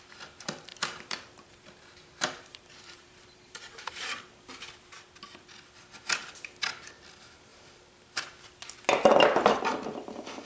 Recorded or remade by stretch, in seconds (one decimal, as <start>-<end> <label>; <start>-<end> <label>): 0.0-0.7 recorded; 0.7-4.3 remade; 4.3-10.5 recorded